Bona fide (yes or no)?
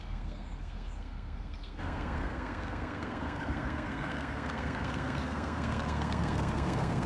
no